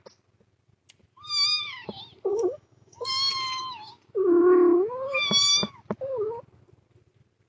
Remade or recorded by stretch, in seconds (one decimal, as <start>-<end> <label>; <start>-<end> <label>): 0.0-2.3 recorded; 2.3-3.3 remade; 3.3-7.5 recorded